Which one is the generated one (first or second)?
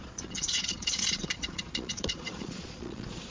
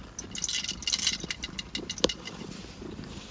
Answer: first